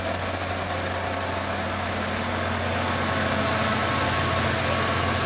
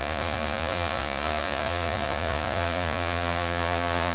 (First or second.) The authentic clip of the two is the first